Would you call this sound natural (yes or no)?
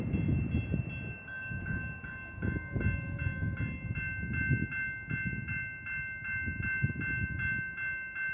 yes